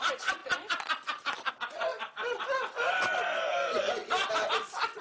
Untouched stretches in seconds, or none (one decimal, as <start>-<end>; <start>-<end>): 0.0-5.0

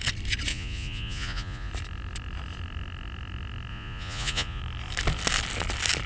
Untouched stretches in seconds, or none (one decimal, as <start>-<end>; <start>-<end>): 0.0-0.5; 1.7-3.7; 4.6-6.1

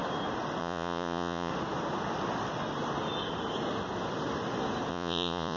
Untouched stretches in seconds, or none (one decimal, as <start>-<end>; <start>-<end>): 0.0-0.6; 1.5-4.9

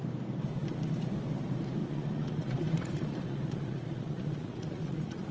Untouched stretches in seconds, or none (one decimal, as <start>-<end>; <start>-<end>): 0.0-1.8